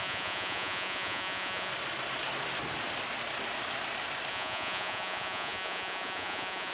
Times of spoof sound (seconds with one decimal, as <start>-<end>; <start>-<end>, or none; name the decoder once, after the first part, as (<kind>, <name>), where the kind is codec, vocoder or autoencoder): 0.0-1.7 (vocoder, Vocos); 4.3-6.7